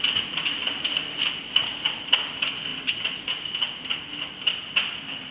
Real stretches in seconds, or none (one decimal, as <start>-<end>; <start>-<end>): 0.0-5.3